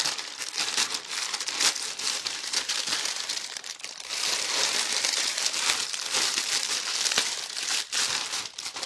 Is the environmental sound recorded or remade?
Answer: remade